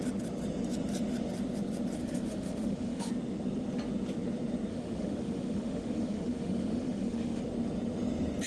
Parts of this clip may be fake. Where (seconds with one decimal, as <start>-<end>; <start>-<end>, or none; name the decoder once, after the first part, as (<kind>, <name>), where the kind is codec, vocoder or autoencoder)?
2.0-3.1 (autoencoder, DAC-VAE); 4.7-7.4